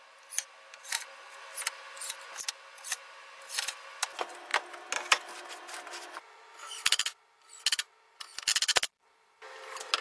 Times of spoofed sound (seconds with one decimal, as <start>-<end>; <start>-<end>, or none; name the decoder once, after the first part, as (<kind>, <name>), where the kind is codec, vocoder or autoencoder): none

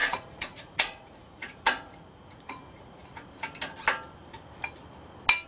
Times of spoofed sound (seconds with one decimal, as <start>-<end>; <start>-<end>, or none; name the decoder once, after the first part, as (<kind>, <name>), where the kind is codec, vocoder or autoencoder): 0.0-3.3 (vocoder, Vocos)

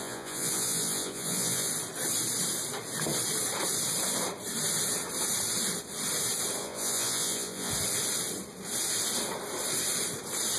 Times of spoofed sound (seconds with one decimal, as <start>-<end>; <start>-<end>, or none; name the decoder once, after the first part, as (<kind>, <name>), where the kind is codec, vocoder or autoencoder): 0.0-1.7 (vocoder, Vocos); 6.6-7.7

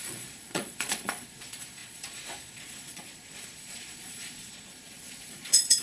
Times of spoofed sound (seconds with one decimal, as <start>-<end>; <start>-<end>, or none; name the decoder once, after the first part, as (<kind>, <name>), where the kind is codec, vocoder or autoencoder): 0.0-5.8 (vocoder, Vocos)

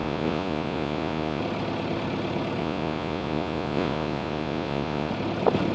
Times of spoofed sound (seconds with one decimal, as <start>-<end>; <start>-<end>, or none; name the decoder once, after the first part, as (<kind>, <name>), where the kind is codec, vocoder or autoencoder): 0.0-1.4 (vocoder, Vocos); 2.6-5.1

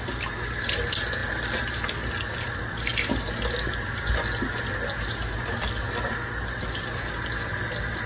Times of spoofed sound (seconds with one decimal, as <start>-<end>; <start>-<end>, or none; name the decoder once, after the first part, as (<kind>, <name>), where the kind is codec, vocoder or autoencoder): none